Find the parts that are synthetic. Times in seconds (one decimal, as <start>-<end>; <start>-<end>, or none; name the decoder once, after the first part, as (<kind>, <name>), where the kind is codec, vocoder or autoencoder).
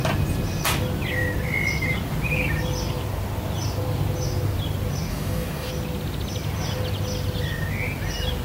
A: 5.1-5.7 (codec, DAC)